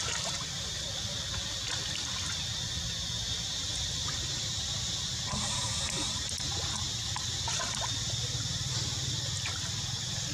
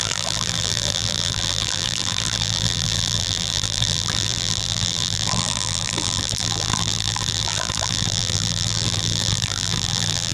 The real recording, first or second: first